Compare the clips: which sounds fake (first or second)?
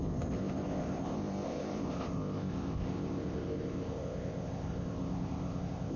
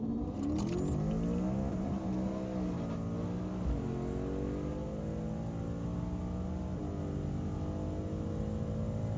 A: first